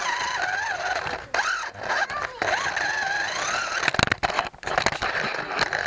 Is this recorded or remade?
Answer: recorded